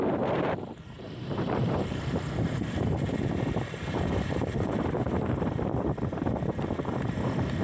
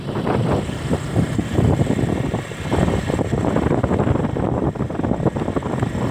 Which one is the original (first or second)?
second